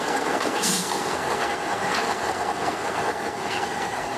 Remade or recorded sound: remade